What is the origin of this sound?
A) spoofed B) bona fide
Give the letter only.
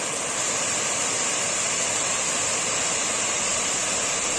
B